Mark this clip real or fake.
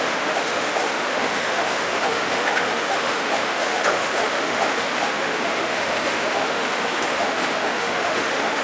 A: fake